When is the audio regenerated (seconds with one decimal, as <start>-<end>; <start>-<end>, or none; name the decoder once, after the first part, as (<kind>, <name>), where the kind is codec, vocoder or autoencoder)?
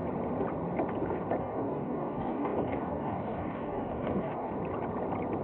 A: 1.4-4.5 (codec, DAC)